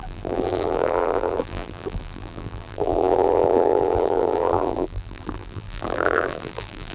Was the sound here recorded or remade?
remade